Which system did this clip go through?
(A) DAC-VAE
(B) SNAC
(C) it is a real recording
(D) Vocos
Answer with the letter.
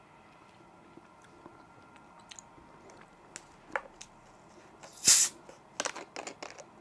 C